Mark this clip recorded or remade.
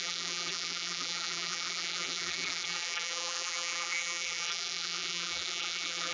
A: remade